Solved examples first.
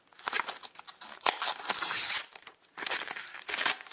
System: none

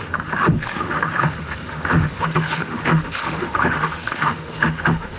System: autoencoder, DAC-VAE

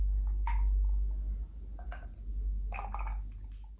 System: none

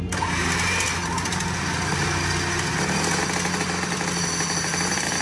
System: none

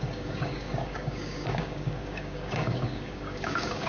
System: codec, DAC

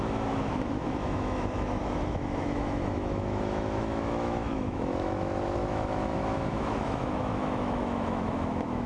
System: autoencoder, DAC-VAE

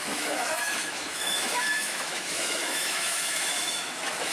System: autoencoder, DAC-VAE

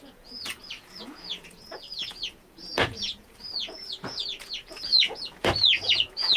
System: vocoder, Vocos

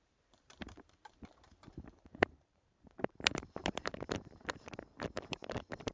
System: vocoder, BigVGAN v2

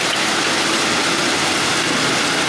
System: none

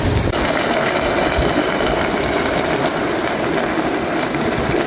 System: none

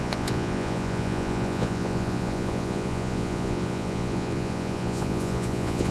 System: vocoder, Vocos